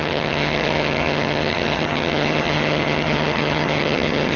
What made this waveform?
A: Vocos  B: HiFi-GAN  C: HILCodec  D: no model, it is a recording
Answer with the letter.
B